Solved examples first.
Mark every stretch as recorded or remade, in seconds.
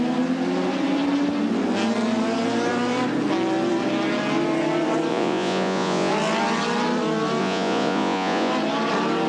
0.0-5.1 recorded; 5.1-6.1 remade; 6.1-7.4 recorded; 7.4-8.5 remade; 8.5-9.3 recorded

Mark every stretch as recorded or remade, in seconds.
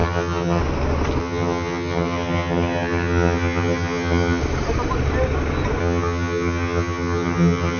0.0-0.6 remade; 0.6-1.2 recorded; 1.2-4.4 remade; 4.4-5.8 recorded; 5.8-7.8 remade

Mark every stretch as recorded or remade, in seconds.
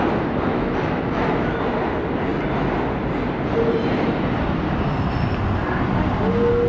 0.0-0.5 recorded; 0.5-1.6 remade; 1.6-6.7 recorded